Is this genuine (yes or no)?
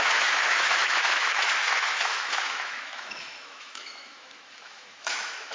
no